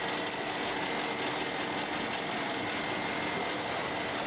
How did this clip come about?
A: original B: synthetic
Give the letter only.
A